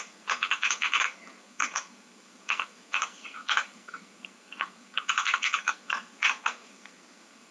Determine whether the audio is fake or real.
fake